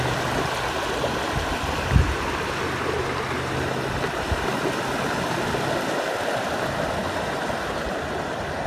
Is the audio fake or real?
real